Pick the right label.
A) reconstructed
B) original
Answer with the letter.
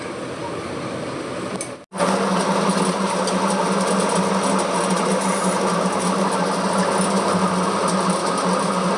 B